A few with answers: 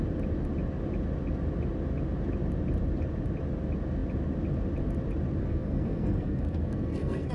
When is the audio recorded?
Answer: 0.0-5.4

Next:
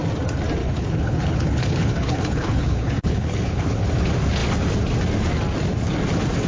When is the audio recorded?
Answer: 0.0-0.6; 3.8-6.5

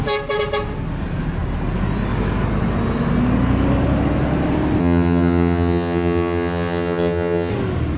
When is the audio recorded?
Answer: 0.0-4.8; 7.5-8.0

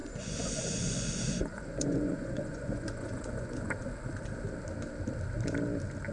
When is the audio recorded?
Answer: 3.7-6.1

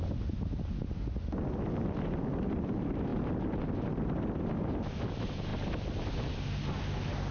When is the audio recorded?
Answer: 0.0-7.3

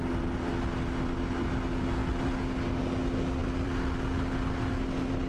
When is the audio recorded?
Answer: 0.0-5.3

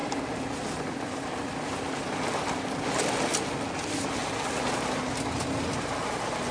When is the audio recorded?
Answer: 0.0-6.5